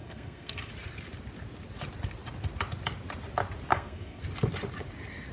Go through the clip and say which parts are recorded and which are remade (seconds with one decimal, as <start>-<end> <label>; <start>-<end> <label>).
0.0-0.7 remade; 0.7-3.7 recorded; 3.7-4.2 remade; 4.2-5.3 recorded